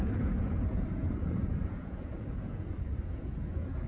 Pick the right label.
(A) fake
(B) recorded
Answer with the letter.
A